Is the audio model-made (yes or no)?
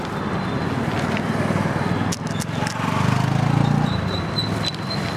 no